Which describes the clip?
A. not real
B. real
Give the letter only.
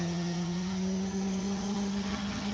A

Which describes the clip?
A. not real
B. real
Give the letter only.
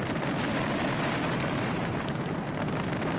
A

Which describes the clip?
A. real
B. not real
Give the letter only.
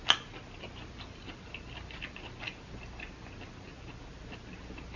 A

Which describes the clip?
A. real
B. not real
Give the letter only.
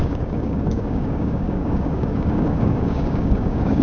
B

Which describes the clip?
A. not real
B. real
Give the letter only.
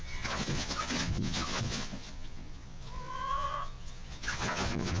A